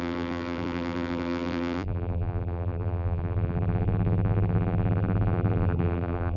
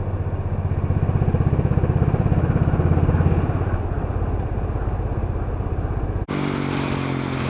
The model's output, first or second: first